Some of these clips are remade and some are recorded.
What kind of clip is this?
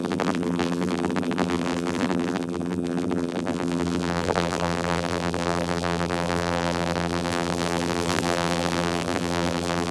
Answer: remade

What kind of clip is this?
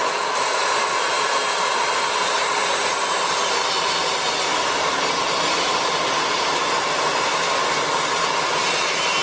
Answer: recorded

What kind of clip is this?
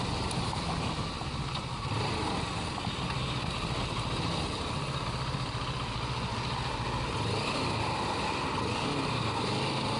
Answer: recorded